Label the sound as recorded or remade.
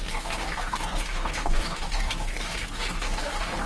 remade